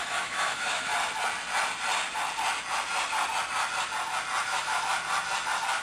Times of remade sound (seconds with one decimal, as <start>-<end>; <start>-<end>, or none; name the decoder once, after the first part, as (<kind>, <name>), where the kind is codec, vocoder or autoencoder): 0.0-0.9 (autoencoder, DAC-VAE); 4.4-4.9